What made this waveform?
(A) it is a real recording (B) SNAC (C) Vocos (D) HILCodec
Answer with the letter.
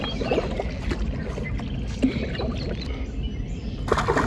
A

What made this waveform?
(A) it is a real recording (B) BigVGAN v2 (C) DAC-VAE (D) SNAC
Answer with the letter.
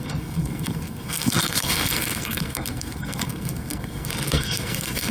D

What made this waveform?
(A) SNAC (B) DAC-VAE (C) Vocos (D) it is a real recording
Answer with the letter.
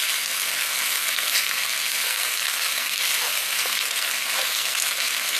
A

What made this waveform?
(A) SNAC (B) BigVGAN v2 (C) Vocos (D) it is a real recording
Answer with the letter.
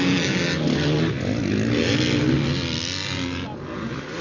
D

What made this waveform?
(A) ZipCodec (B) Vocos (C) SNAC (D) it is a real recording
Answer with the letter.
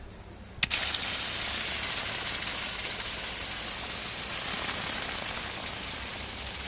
D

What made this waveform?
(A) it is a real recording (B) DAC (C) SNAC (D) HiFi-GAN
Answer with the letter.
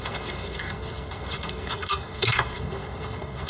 C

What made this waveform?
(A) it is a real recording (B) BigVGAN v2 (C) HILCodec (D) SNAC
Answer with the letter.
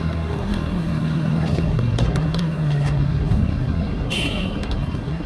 D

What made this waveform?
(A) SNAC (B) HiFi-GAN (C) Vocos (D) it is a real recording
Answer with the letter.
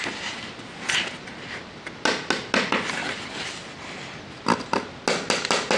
D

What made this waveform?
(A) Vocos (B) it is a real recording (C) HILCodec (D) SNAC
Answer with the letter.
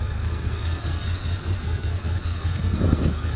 D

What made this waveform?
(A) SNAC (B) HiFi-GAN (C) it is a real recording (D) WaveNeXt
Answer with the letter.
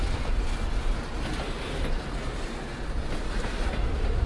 C